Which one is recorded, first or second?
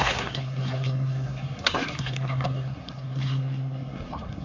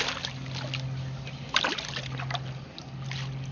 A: second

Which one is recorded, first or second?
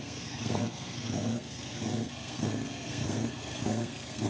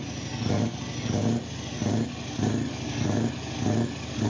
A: second